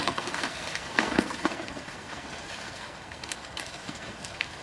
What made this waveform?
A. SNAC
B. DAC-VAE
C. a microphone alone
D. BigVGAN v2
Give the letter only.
A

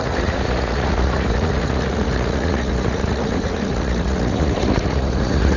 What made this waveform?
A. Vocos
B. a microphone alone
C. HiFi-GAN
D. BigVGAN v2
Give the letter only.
A